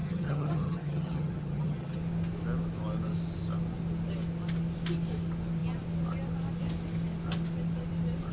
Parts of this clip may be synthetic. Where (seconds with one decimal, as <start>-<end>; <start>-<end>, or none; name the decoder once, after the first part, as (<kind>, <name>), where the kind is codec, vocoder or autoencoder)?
0.0-2.0 (vocoder, HiFi-GAN)